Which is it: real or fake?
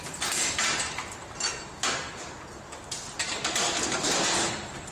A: fake